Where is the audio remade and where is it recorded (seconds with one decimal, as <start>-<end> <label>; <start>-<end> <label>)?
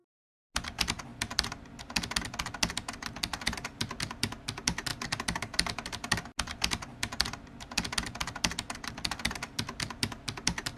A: 0.0-10.8 recorded